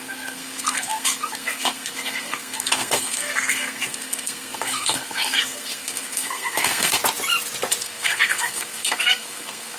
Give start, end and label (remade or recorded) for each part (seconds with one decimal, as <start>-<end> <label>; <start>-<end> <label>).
0.0-7.0 remade; 7.0-7.8 recorded; 7.8-9.8 remade